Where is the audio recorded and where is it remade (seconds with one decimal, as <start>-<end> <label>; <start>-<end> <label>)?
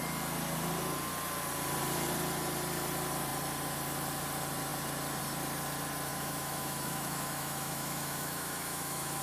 0.0-6.1 recorded; 6.1-9.2 remade